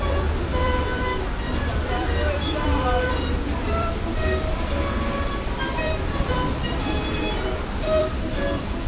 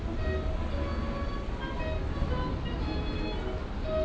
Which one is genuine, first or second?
second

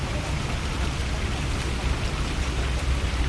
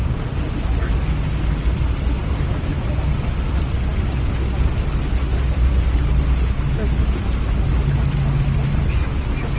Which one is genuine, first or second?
second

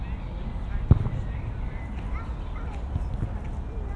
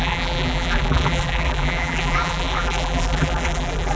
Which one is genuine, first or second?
first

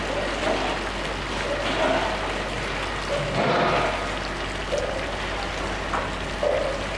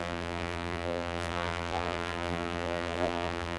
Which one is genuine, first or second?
first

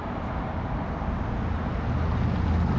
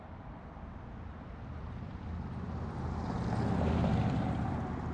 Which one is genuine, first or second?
first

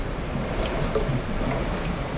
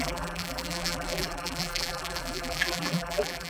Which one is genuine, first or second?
first